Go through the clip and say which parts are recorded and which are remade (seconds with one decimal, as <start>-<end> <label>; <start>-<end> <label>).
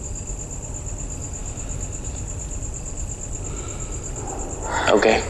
0.0-5.3 recorded